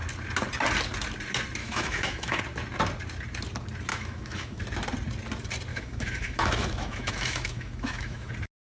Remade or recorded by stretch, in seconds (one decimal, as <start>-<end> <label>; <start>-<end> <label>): 0.0-1.6 recorded; 1.6-2.4 remade; 2.4-3.9 recorded; 3.9-4.6 remade; 4.6-5.7 recorded; 5.7-8.3 remade; 8.3-8.8 recorded